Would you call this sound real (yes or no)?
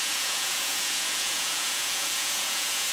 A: no